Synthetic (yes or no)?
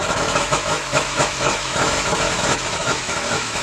yes